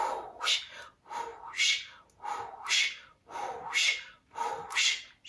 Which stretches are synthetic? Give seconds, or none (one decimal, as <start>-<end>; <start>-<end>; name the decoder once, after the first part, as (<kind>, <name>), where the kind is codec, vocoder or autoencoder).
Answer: none